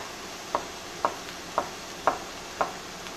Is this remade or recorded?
recorded